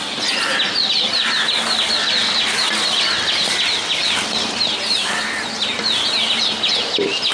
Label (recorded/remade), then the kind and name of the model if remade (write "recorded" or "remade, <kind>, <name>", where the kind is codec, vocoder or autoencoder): recorded